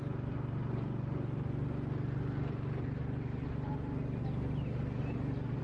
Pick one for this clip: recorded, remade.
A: recorded